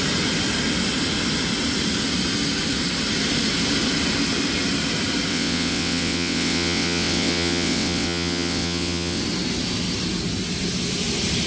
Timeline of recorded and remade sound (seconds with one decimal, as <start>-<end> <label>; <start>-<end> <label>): 0.0-5.3 recorded; 5.3-9.2 remade; 9.2-11.5 recorded